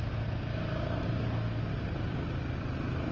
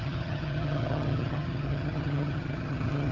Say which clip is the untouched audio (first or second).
first